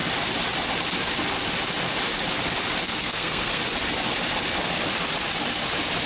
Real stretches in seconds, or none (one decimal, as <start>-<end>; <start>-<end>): 0.0-2.8; 3.6-6.1